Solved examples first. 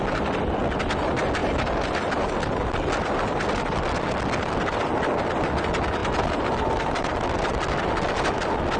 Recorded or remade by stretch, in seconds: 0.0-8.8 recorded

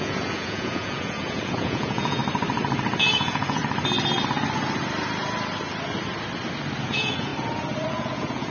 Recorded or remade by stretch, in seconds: 0.0-2.2 remade; 2.2-3.0 recorded; 3.0-3.6 remade; 3.6-6.8 recorded; 6.8-7.3 remade; 7.3-7.9 recorded; 7.9-8.5 remade

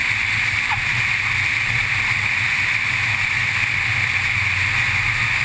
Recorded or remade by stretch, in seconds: 0.0-5.4 recorded

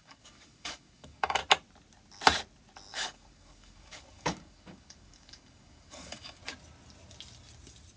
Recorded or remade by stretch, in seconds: 0.0-1.4 remade; 1.4-2.9 recorded; 2.9-6.4 remade; 6.4-8.0 recorded